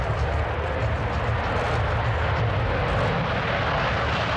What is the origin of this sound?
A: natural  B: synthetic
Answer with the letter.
A